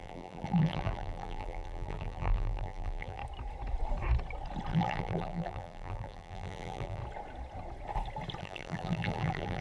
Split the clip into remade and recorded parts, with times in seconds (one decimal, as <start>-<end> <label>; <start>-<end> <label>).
0.0-3.2 remade; 3.2-4.7 recorded; 4.7-7.0 remade; 7.0-8.4 recorded; 8.4-9.6 remade